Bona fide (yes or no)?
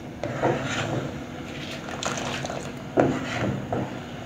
no